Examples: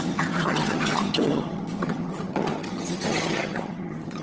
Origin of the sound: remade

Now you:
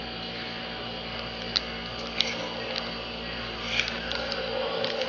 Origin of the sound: recorded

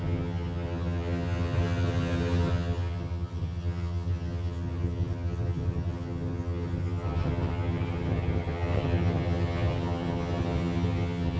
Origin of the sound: remade